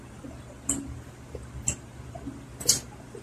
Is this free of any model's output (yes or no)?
yes